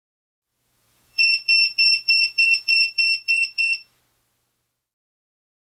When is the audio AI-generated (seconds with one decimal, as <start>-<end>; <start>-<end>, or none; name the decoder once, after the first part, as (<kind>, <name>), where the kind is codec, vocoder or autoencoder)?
0.5-4.0 (vocoder, Vocos)